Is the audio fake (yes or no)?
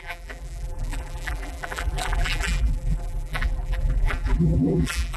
yes